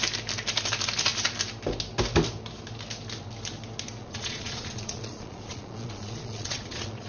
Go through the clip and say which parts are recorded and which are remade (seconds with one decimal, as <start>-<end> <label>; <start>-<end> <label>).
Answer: 0.0-4.0 recorded; 4.0-7.1 remade